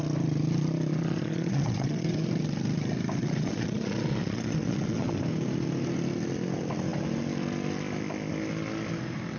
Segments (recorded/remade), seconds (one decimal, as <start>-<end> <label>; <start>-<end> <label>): 0.0-0.9 recorded; 0.9-2.3 remade; 2.3-3.2 recorded; 3.2-5.2 remade; 5.2-9.4 recorded